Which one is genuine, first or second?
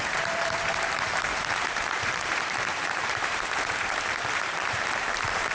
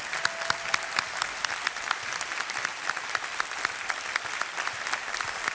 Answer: second